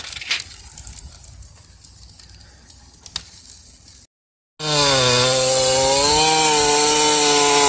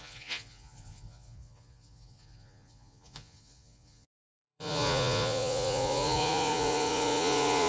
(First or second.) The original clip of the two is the first